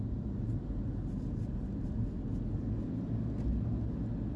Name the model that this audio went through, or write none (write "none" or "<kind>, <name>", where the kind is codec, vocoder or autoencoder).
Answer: none